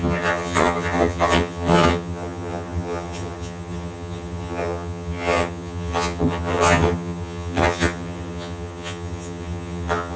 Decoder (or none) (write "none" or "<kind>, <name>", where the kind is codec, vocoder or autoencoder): vocoder, HiFi-GAN